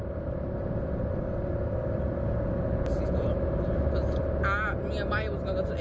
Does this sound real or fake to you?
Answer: real